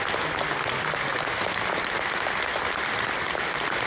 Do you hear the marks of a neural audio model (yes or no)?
no